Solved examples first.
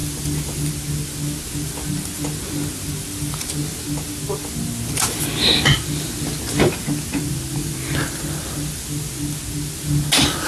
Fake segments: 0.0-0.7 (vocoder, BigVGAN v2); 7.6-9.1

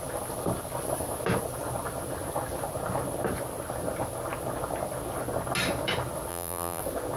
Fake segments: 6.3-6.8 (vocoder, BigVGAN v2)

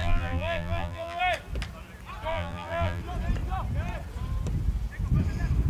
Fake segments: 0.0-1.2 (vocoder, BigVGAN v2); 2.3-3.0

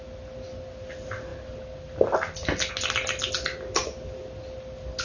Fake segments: none

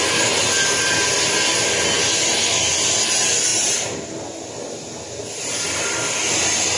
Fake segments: 3.5-4.1 (vocoder, BigVGAN v2)

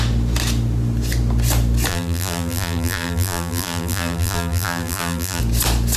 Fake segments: 1.9-5.4 (vocoder, BigVGAN v2)

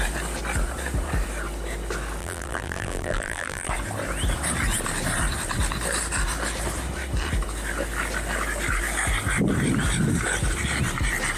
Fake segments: 2.2-3.7 (vocoder, BigVGAN v2)